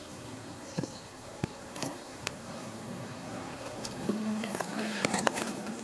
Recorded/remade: remade